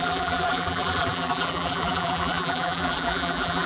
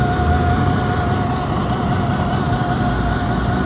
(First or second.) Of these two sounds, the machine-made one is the first